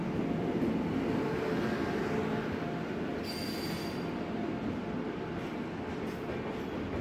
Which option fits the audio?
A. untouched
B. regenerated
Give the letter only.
A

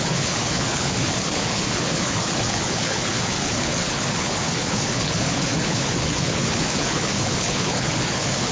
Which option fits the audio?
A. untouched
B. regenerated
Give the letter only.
B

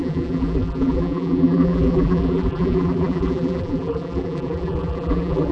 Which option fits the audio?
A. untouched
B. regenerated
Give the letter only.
B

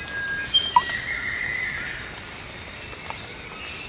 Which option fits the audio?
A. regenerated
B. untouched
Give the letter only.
B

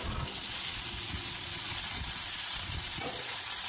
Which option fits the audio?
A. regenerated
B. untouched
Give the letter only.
A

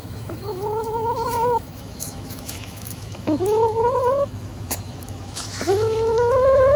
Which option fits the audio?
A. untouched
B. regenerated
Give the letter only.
B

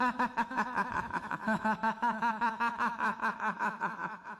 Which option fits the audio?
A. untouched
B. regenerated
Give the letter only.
B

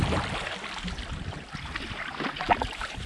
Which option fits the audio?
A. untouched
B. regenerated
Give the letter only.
A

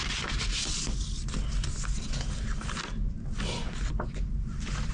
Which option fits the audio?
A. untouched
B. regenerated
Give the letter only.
A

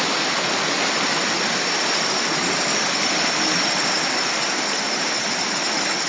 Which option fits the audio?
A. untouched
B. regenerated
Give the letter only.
A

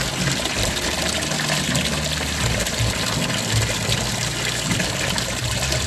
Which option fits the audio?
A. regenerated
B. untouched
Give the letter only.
B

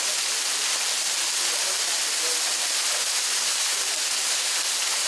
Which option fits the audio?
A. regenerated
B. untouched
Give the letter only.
B